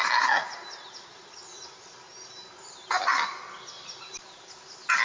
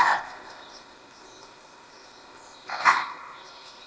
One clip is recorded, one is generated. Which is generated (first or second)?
second